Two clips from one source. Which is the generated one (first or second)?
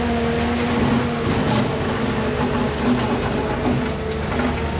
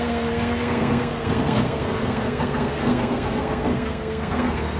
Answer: second